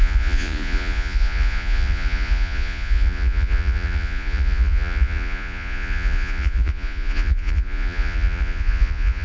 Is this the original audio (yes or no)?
no